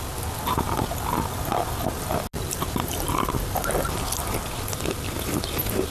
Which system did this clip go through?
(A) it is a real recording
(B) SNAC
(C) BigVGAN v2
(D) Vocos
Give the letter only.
A